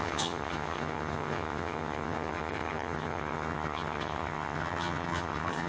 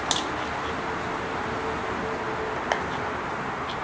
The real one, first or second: second